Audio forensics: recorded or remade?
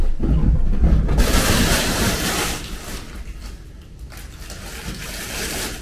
recorded